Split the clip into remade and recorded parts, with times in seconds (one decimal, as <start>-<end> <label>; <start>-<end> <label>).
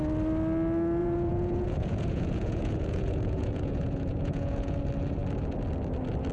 0.0-1.0 recorded; 1.0-4.8 remade; 4.8-6.3 recorded